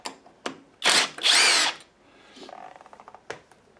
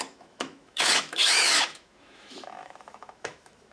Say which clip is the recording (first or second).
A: first